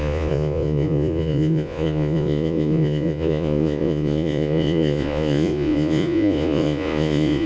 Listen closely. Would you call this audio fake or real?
fake